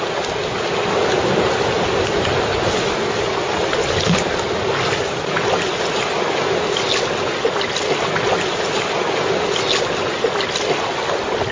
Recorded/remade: recorded